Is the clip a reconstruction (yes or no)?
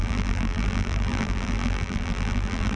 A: yes